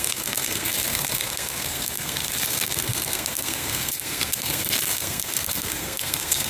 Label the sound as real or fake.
fake